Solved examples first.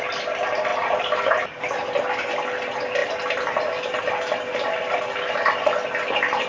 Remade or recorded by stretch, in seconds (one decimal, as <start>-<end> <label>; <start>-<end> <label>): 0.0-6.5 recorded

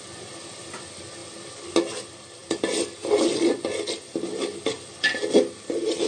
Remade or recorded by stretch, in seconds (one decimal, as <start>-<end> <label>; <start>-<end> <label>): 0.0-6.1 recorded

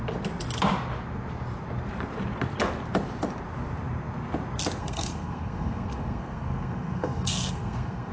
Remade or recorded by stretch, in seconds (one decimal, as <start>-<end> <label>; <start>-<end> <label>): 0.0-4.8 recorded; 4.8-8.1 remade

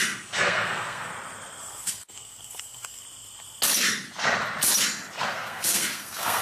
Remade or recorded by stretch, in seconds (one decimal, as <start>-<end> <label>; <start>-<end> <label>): 0.0-1.1 remade; 1.1-1.6 recorded; 1.6-3.0 remade; 3.0-5.2 recorded; 5.2-6.4 remade

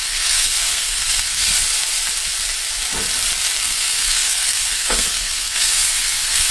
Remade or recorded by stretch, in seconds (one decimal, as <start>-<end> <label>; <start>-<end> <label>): 0.0-1.5 remade; 1.5-3.6 recorded; 3.6-6.5 remade